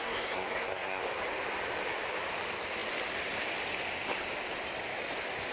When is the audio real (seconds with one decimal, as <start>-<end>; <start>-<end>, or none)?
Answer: 1.0-5.5